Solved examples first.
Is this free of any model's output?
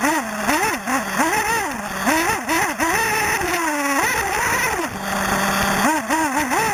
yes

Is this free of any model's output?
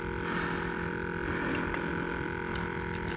yes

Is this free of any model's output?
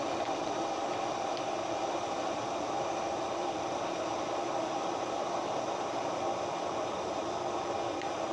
no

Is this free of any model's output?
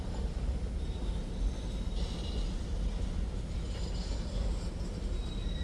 yes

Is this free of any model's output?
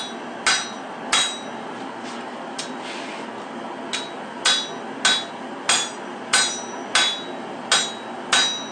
yes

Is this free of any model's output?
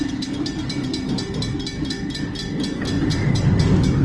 yes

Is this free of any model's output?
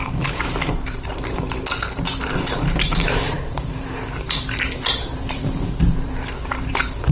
no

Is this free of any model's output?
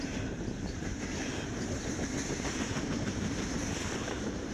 no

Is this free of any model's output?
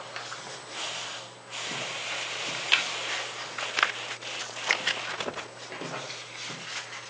yes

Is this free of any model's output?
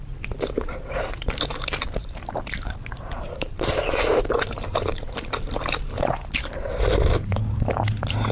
no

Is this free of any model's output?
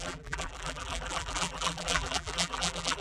no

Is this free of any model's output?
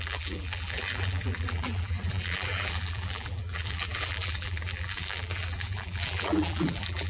no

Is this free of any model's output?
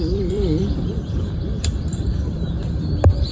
no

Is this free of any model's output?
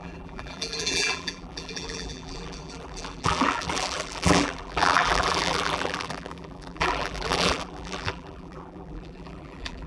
no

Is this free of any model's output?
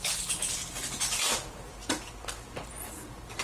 yes